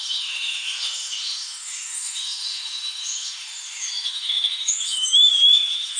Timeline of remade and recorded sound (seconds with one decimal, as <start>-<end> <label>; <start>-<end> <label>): 0.0-6.0 remade